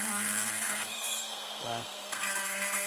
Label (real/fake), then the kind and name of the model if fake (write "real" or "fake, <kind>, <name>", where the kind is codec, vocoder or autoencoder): fake, codec, SNAC